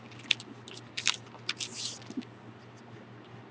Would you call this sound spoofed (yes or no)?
no